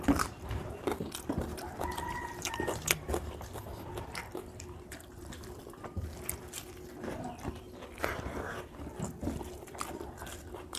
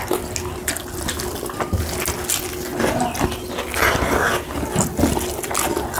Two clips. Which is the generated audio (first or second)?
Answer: first